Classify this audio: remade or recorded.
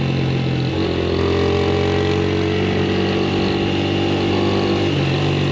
recorded